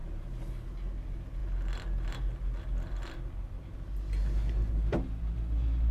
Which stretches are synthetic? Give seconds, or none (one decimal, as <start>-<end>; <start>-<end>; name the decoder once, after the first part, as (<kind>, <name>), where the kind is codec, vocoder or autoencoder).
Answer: 0.0-0.5 (vocoder, BigVGAN v2)